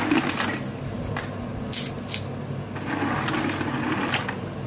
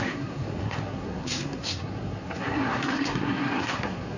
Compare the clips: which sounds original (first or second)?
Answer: first